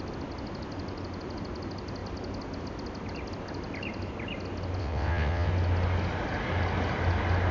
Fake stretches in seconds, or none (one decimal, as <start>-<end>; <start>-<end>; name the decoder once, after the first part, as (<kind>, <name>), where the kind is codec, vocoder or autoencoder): 4.8-5.5 (vocoder, WaveNeXt)